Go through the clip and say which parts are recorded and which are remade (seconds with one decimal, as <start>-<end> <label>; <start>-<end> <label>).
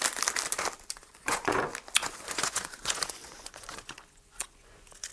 0.0-1.0 recorded; 1.0-1.6 remade; 1.6-2.0 recorded; 2.0-5.1 remade